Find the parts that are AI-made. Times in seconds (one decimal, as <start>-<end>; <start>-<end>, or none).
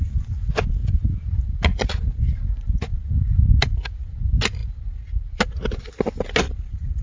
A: none